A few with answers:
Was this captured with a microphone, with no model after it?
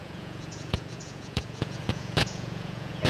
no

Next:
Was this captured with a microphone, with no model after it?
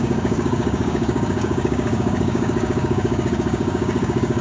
no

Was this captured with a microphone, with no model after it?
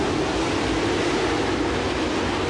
yes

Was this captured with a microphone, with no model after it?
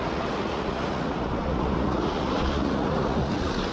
no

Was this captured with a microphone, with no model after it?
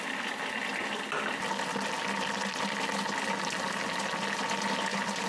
yes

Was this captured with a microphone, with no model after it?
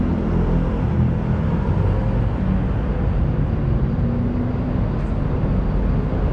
yes